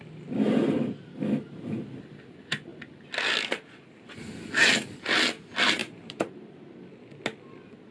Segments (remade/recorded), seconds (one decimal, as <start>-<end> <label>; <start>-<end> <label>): 0.0-5.8 recorded; 5.8-6.8 remade; 6.8-7.9 recorded